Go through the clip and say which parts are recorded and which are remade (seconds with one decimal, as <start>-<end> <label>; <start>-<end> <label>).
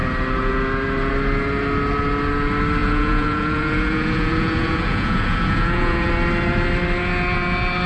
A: 0.0-2.8 recorded; 2.8-6.1 remade; 6.1-7.9 recorded